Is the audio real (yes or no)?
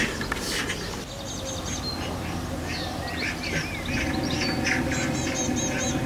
yes